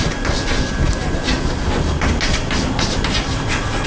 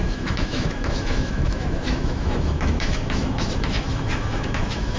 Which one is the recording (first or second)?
first